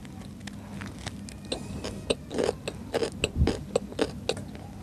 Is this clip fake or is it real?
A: real